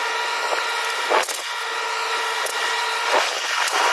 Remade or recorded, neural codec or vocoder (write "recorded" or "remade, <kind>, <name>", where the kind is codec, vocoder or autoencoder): recorded